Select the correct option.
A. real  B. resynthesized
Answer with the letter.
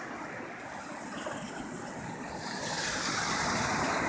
A